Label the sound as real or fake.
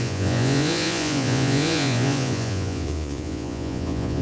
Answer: fake